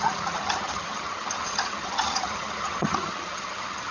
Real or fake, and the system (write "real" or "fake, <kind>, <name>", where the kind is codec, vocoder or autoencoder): fake, vocoder, HiFi-GAN